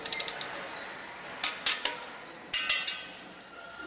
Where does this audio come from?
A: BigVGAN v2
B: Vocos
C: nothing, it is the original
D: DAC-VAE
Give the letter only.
C